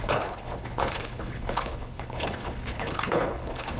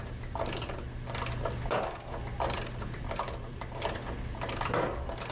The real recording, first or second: second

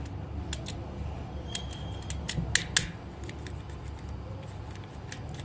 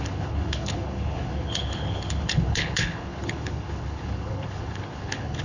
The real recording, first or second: first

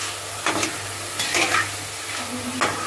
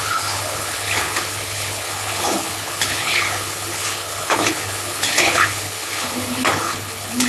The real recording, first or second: first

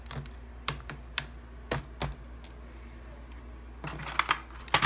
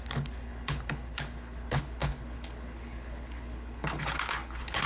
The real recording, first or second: first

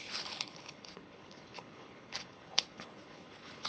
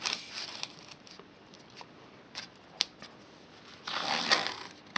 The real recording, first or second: second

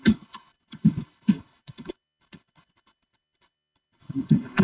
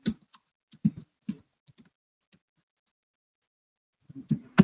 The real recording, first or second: second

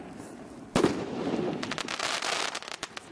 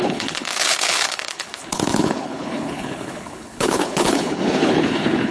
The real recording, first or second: first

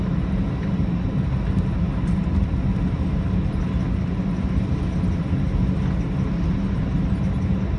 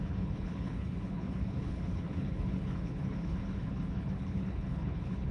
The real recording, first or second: first